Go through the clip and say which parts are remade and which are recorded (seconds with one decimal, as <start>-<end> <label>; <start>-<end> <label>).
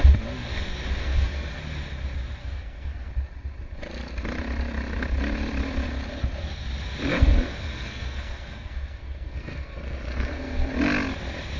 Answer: 0.0-1.0 recorded; 1.0-1.6 remade; 1.6-2.4 recorded; 2.4-3.1 remade; 3.1-7.1 recorded; 7.1-10.7 remade; 10.7-11.6 recorded